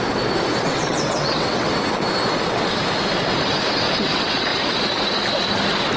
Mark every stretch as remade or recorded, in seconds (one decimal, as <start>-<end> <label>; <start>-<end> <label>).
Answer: 0.0-0.6 recorded; 0.6-1.7 remade; 1.7-3.9 recorded; 3.9-4.5 remade; 4.5-6.0 recorded